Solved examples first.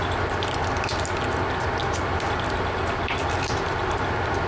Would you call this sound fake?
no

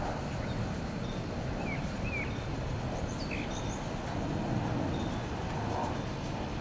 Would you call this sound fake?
no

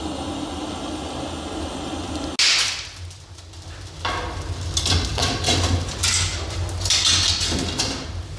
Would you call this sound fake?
no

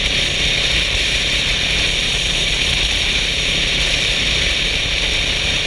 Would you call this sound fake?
no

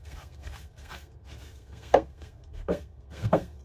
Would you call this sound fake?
yes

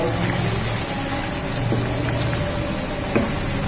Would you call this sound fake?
no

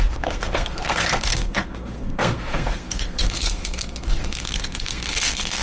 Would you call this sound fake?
yes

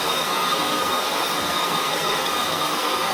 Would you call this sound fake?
yes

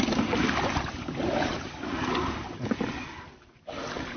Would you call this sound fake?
no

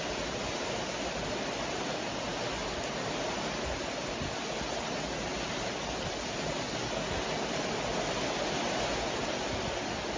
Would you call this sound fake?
no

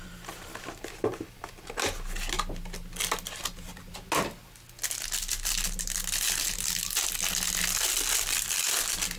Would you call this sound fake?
no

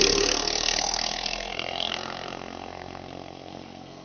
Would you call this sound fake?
yes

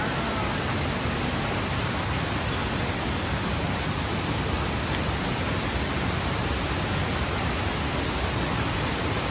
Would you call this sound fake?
no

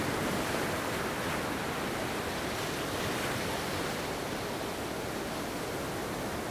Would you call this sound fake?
no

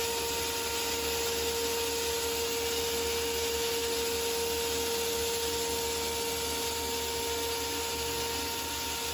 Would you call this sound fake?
no